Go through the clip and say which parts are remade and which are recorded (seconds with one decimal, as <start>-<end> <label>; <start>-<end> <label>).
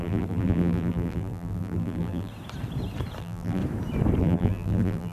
0.0-2.3 remade; 2.3-3.2 recorded; 3.2-3.6 remade; 3.6-4.2 recorded; 4.2-5.1 remade